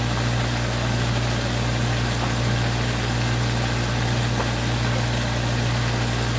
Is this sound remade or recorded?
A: recorded